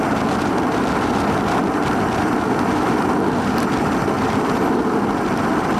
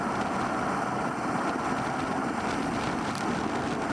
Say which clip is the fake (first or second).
first